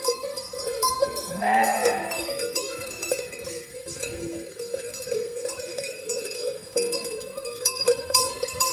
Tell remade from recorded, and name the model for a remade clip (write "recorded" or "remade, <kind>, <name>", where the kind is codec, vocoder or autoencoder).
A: remade, codec, SNAC